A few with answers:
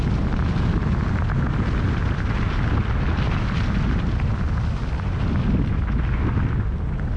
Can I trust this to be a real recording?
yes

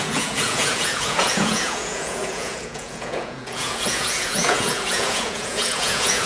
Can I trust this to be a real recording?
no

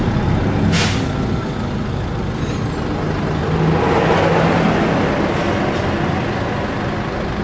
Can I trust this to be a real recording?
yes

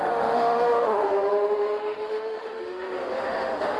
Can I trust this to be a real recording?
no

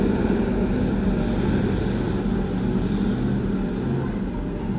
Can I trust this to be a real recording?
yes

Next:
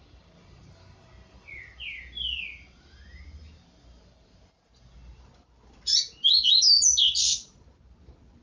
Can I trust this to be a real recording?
yes